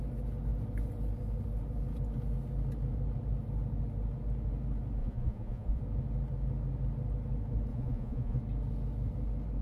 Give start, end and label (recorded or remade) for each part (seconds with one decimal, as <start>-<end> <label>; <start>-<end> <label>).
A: 0.0-5.0 recorded; 5.0-5.8 remade; 5.8-7.7 recorded; 7.7-8.4 remade; 8.4-9.6 recorded